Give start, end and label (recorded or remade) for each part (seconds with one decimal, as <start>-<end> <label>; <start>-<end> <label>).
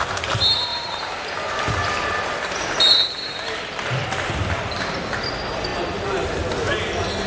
0.0-0.7 recorded; 0.7-3.6 remade; 3.6-4.0 recorded; 4.0-4.8 remade; 4.8-7.3 recorded